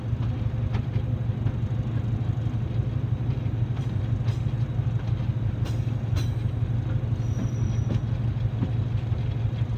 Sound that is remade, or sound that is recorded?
recorded